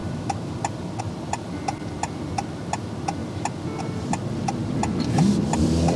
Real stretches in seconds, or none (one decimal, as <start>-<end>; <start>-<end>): 0.0-1.0; 3.2-3.8